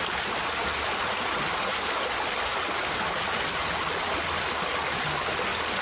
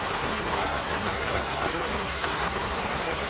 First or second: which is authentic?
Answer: first